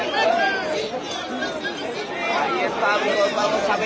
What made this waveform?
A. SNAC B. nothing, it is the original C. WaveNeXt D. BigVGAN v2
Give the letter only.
B